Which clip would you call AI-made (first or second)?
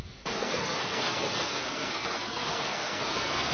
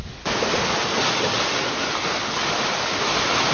first